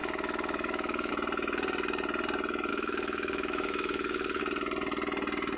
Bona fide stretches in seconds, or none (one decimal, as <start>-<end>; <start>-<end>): 1.1-2.7; 4.4-5.6